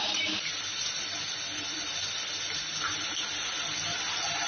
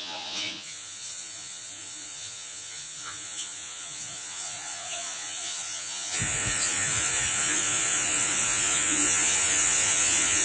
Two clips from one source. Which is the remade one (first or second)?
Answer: second